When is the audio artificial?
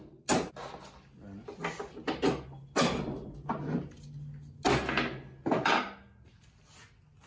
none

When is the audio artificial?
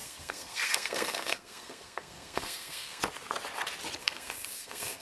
0.0-3.0 (codec, SNAC); 4.0-5.0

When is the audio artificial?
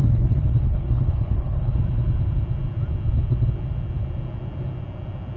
0.0-1.8 (codec, HILCodec)